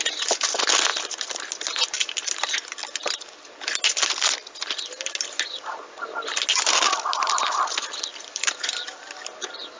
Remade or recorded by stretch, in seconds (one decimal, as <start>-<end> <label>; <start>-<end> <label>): 0.0-8.1 recorded; 8.1-8.8 remade; 8.8-9.8 recorded